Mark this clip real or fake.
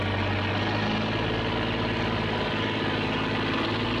real